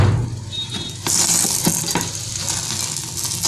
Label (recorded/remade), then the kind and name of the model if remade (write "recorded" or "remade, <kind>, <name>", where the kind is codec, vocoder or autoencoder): recorded